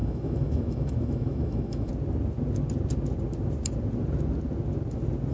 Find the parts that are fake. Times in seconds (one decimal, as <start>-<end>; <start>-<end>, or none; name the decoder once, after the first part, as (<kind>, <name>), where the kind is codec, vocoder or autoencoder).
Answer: 0.0-1.9 (autoencoder, DAC-VAE)